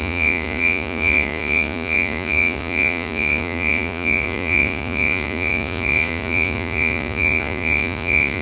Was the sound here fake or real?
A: fake